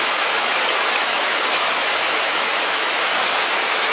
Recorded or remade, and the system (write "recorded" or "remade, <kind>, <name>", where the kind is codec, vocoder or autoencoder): remade, autoencoder, DAC-VAE